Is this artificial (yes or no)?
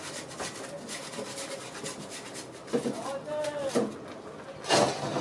no